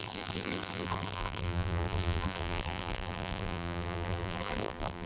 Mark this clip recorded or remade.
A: remade